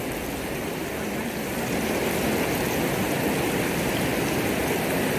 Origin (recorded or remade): recorded